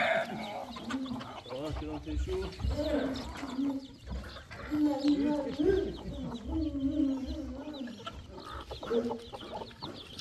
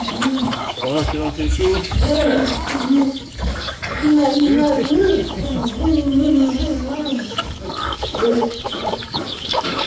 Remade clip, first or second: second